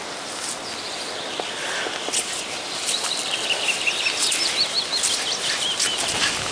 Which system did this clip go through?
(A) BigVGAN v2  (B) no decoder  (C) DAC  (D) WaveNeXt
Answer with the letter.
B